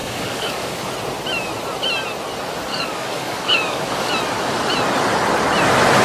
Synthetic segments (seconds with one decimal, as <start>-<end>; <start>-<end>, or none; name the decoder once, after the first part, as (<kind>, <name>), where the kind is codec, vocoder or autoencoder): 0.0-0.8 (codec, DAC); 2.7-4.1